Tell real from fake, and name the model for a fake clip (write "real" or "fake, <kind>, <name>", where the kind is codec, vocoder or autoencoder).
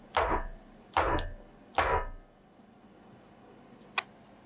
real